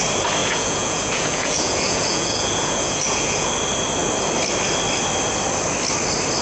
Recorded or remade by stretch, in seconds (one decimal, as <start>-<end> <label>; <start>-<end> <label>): 0.0-0.4 recorded; 0.4-3.5 remade; 3.5-6.4 recorded